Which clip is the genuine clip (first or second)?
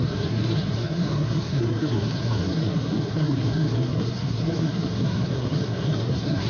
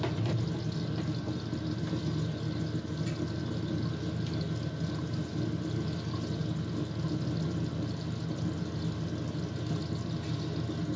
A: second